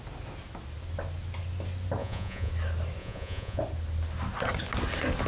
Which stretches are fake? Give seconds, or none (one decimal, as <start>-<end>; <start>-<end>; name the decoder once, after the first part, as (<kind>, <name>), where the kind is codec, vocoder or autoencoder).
2.0-2.5 (vocoder, Vocos); 3.0-3.6